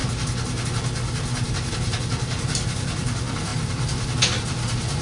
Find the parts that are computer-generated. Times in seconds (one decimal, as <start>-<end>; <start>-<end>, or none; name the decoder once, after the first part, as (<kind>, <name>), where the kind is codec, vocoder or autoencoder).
1.7-5.0 (vocoder, BigVGAN v2)